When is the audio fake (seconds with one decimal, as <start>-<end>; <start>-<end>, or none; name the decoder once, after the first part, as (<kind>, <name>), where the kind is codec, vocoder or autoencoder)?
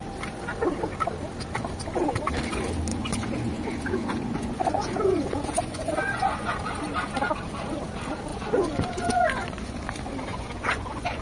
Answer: 2.9-6.6 (vocoder, Vocos); 8.3-9.8; 10.3-11.2